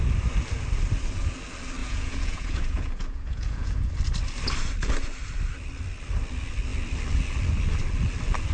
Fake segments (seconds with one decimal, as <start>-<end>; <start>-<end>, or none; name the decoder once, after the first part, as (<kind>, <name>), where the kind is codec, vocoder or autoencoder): 1.8-3.9 (vocoder, Vocos)